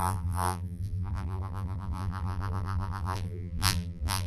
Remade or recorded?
remade